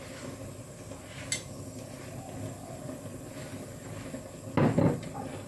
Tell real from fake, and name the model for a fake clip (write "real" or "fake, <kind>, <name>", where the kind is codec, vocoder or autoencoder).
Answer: real